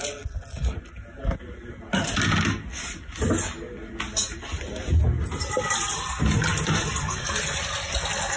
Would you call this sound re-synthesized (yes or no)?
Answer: no